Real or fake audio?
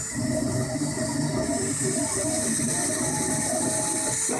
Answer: real